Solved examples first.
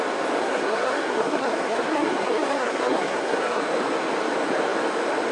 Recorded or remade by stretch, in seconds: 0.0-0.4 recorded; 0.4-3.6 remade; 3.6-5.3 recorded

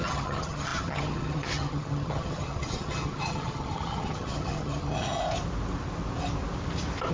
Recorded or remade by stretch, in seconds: 0.0-5.2 remade; 5.2-7.1 recorded